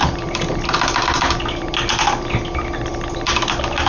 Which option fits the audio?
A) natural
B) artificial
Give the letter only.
A